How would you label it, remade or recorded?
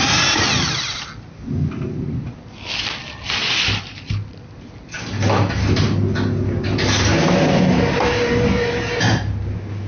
recorded